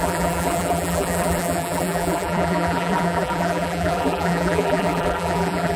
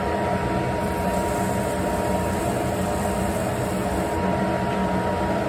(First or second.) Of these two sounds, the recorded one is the second